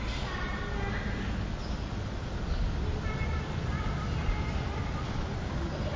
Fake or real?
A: real